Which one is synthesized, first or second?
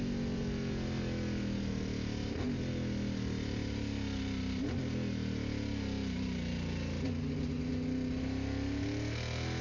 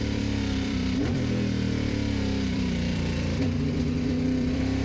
second